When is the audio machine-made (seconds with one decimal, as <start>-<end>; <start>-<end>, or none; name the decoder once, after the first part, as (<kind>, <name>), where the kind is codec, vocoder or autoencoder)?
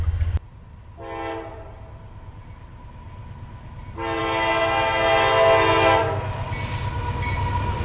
6.0-6.5 (codec, DAC)